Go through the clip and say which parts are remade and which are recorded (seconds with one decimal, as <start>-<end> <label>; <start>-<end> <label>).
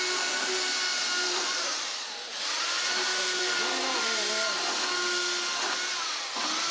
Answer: 0.0-0.9 recorded; 0.9-4.3 remade; 4.3-6.7 recorded